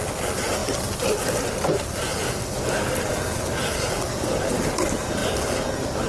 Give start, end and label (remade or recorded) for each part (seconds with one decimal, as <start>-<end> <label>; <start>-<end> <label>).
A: 0.0-6.1 recorded